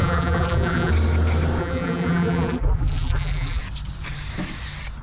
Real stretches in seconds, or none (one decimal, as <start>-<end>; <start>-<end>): 0.9-1.6; 3.6-5.0